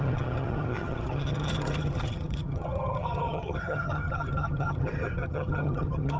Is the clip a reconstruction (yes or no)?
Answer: yes